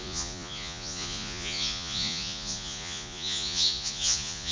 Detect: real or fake fake